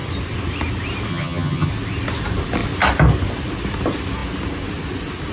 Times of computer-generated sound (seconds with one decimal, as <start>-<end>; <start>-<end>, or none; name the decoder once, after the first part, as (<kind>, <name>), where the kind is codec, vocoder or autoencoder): 1.1-1.7 (vocoder, HiFi-GAN)